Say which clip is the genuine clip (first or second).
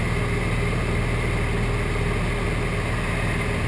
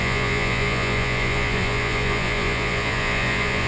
first